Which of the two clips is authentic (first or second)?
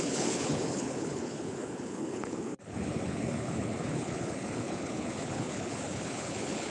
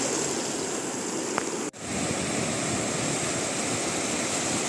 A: second